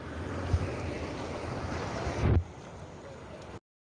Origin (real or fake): fake